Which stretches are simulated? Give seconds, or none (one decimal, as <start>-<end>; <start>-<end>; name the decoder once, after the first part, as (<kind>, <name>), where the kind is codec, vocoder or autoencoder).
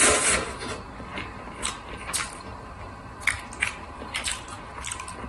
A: 1.1-4.3 (vocoder, BigVGAN v2)